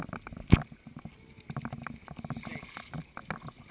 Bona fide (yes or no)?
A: yes